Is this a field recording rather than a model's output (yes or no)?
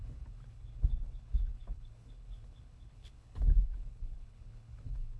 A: no